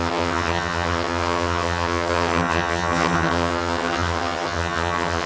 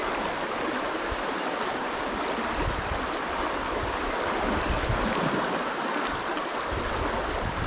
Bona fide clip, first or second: second